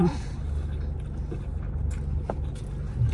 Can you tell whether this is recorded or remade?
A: recorded